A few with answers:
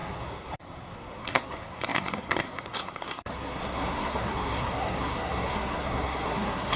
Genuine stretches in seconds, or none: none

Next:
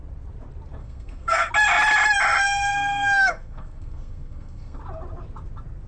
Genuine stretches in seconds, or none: 0.0-0.8; 1.5-2.4; 4.8-5.9

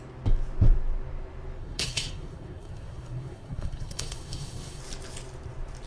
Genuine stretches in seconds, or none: 0.0-1.6; 4.8-5.9

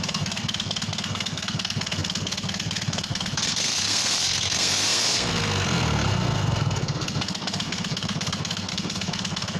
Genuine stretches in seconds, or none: none